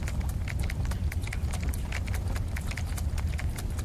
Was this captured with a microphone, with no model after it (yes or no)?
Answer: yes